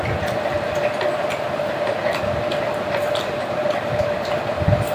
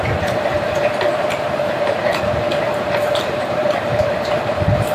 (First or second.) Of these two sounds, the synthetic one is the second